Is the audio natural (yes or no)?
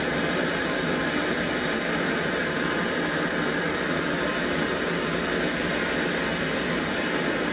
yes